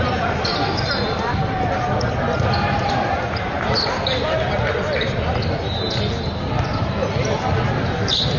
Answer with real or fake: real